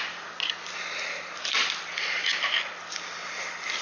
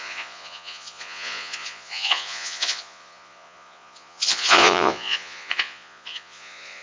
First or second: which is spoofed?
second